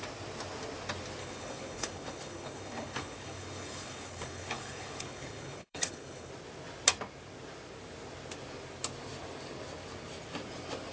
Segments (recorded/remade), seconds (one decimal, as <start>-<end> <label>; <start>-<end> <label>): 0.0-1.2 recorded; 1.2-6.3 remade; 6.3-10.9 recorded